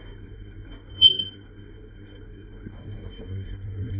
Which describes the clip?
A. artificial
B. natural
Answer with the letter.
A